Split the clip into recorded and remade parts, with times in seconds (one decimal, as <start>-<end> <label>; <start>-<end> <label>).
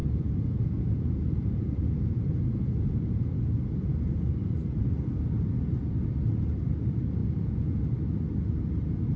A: 0.0-4.3 remade; 4.3-7.2 recorded; 7.2-7.8 remade; 7.8-9.2 recorded